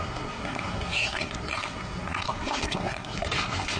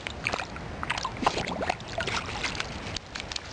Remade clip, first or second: first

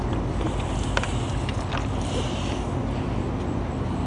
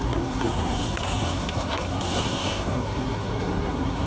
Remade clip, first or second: second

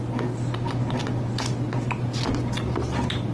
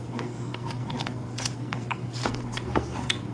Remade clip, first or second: second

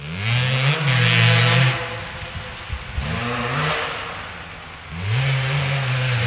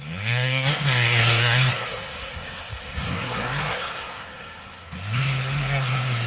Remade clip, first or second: second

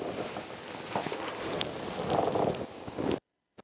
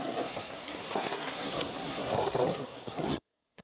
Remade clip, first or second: second